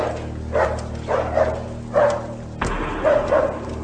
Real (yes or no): yes